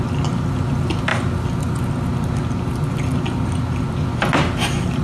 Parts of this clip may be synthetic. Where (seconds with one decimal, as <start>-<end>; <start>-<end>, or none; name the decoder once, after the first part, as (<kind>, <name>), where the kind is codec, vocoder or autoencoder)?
none